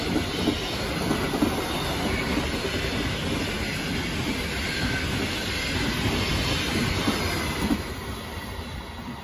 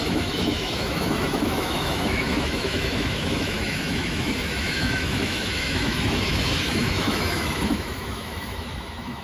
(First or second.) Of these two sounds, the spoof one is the second